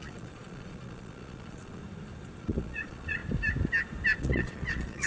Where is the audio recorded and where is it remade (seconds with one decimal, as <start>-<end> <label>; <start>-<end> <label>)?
0.0-1.8 remade; 1.8-2.4 recorded; 2.4-3.2 remade; 3.2-4.2 recorded; 4.2-5.1 remade

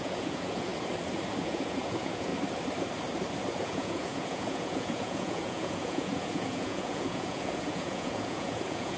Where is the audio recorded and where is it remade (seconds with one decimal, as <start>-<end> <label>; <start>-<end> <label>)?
0.0-0.7 remade; 0.7-1.4 recorded; 1.4-2.3 remade; 2.3-3.5 recorded; 3.5-9.0 remade

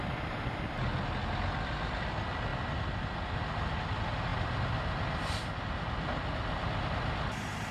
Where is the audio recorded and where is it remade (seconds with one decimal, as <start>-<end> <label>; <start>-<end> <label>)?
0.0-7.7 recorded

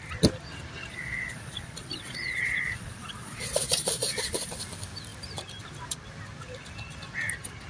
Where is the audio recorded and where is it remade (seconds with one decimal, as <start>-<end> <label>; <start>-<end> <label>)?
0.0-0.9 recorded; 0.9-4.5 remade; 4.5-7.7 recorded

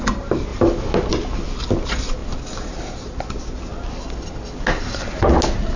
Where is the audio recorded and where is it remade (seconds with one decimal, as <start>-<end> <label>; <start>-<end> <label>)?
0.0-5.8 recorded

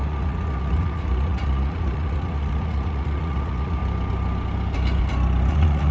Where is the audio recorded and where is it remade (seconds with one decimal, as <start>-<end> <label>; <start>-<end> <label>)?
0.0-3.8 remade; 3.8-5.5 recorded; 5.5-5.9 remade

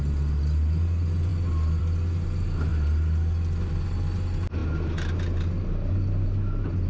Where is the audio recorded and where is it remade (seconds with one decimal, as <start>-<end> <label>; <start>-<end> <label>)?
0.0-6.9 recorded

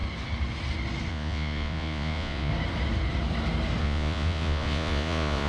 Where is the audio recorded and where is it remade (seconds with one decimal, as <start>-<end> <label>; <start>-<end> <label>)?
0.0-1.1 recorded; 1.1-2.5 remade; 2.5-3.8 recorded; 3.8-5.5 remade